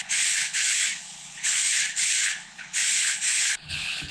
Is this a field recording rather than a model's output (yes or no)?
no